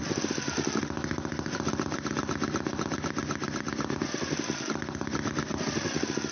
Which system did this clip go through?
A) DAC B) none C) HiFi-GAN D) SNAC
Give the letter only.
B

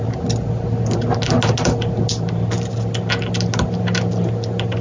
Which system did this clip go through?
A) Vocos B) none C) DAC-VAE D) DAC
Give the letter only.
B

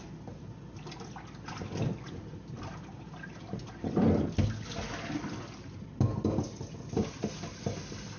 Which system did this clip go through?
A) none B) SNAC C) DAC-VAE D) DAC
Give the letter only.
A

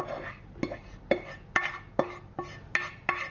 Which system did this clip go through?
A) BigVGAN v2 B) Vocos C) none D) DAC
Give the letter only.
C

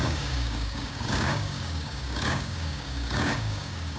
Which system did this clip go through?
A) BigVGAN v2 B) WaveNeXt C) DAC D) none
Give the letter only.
C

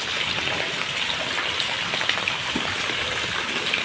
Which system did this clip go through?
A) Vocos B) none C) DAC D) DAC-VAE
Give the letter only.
B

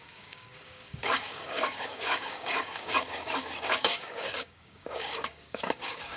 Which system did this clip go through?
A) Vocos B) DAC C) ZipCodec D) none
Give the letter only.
B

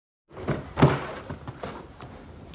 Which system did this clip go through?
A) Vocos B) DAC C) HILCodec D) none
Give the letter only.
D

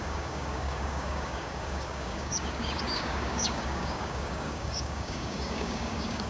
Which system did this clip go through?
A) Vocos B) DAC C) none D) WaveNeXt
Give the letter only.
B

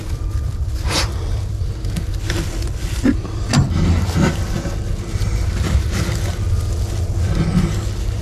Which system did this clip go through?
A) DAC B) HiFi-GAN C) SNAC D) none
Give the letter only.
D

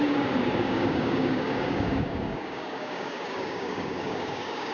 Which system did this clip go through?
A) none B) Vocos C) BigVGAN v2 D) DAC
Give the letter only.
D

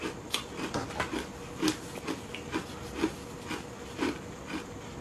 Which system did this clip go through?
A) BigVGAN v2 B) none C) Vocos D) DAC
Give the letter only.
B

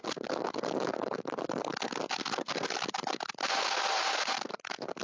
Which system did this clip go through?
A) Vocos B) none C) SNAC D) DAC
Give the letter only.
B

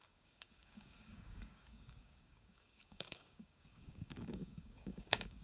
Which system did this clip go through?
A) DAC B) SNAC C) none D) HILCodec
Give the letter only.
A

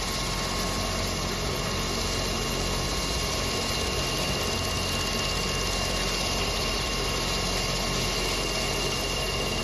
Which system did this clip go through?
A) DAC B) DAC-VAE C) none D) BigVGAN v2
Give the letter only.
C